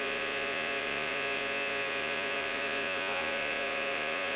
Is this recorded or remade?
remade